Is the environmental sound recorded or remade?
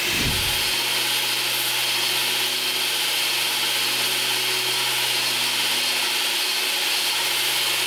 recorded